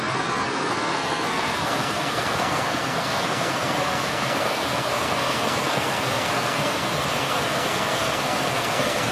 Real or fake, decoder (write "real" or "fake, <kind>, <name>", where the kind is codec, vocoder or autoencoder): fake, codec, SNAC